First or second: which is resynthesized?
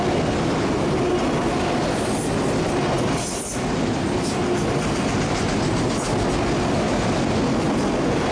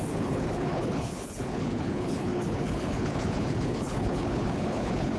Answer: second